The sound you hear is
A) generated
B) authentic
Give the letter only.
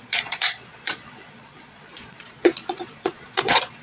A